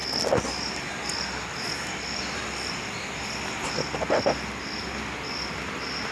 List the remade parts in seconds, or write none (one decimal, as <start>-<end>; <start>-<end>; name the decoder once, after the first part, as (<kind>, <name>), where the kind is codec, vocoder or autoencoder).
none